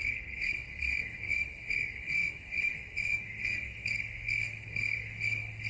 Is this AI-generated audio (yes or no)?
yes